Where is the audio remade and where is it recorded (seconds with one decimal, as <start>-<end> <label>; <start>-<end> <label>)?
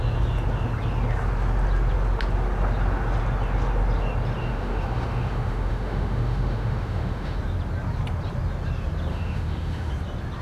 0.0-4.4 recorded; 4.4-7.4 remade; 7.4-9.1 recorded; 9.1-9.9 remade; 9.9-10.4 recorded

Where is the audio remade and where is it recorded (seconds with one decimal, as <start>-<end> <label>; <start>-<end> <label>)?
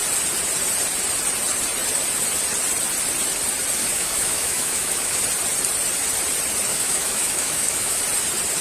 0.0-3.8 recorded; 3.8-5.2 remade; 5.2-6.7 recorded; 6.7-8.0 remade; 8.0-8.6 recorded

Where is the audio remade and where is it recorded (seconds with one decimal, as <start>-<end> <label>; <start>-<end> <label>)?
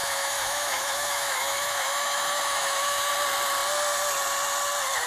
0.0-3.1 remade; 3.1-5.1 recorded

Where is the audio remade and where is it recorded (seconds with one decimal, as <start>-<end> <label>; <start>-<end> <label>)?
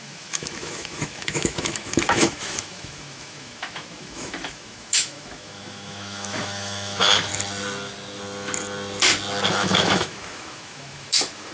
0.0-7.3 remade; 7.3-9.5 recorded; 9.5-11.5 remade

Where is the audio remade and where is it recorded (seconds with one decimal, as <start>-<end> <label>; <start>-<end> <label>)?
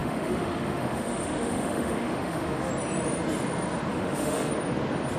0.0-2.7 remade; 2.7-3.9 recorded; 3.9-4.5 remade; 4.5-5.2 recorded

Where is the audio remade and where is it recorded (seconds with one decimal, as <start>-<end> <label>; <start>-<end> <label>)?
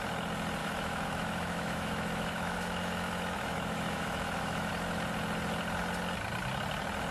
0.0-0.6 recorded; 0.6-4.7 remade; 4.7-7.1 recorded